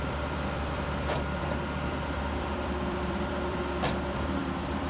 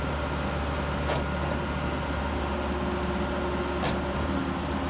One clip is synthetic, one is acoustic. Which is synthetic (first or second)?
first